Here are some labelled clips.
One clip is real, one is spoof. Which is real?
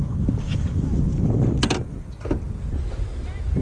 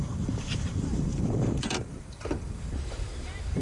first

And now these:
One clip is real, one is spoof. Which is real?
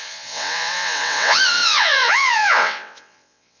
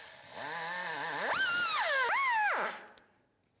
second